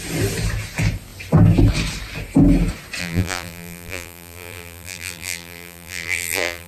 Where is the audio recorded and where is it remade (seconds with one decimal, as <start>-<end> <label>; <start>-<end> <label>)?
0.0-3.0 recorded; 3.0-6.7 remade